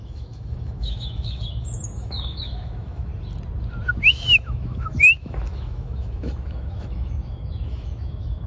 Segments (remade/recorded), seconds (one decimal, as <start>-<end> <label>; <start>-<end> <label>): 0.0-3.1 remade; 3.1-4.1 recorded; 4.1-8.5 remade